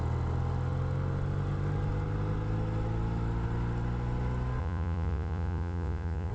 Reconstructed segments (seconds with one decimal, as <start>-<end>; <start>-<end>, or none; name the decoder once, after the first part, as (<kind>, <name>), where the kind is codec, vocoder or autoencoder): 4.6-6.3 (vocoder, Vocos)